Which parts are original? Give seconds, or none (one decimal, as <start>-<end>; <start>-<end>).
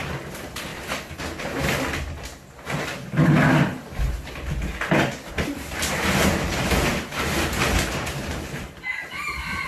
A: 0.7-5.3; 6.9-7.9